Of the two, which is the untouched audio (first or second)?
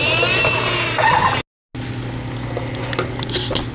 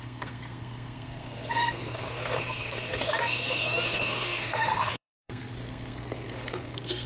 first